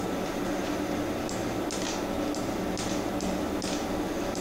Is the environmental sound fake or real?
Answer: real